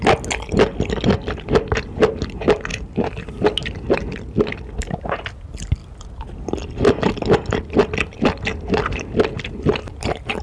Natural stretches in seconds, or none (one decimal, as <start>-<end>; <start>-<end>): 0.0-2.7; 3.3-8.5; 9.1-10.4